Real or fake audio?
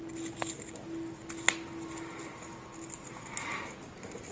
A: real